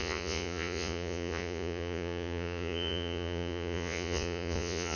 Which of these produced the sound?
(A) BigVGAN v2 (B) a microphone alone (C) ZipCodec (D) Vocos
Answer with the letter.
D